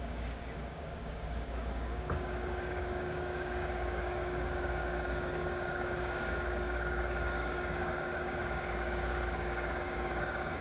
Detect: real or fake fake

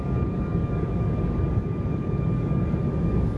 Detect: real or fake fake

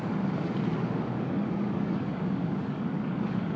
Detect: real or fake fake